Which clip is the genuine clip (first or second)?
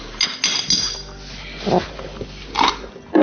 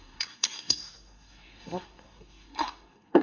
first